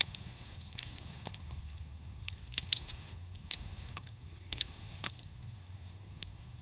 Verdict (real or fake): fake